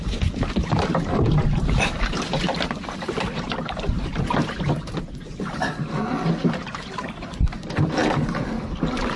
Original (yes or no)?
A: yes